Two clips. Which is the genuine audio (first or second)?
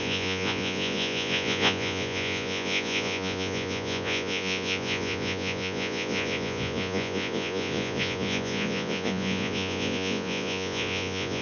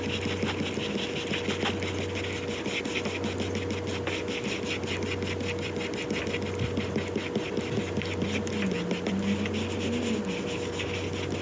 second